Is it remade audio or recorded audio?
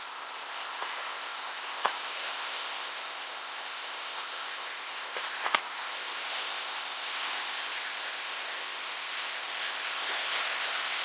remade